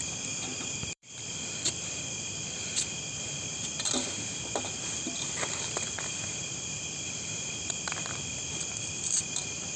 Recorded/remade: remade